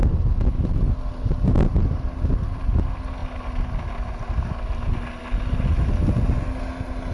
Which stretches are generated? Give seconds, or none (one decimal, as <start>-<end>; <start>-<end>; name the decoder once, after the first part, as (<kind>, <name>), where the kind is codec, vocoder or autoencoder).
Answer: none